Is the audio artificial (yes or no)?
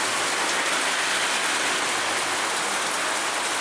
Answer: no